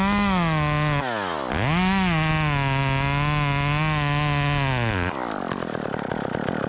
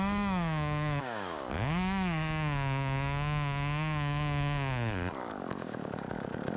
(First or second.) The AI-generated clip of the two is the second